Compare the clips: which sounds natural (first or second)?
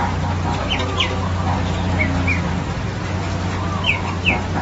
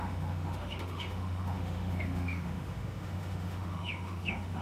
first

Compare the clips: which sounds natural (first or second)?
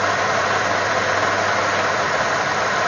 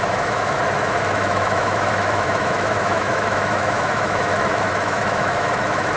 first